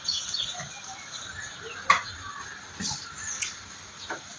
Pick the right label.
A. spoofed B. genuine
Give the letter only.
B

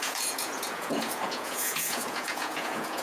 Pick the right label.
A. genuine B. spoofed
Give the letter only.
B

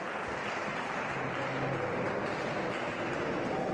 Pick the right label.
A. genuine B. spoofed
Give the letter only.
A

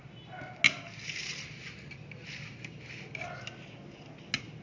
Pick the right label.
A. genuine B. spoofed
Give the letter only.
A